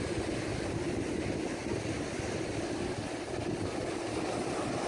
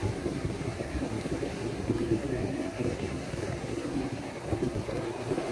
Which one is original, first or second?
first